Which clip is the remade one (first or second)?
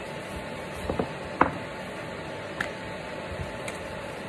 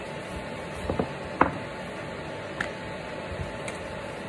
first